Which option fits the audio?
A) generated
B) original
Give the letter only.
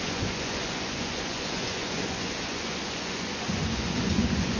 A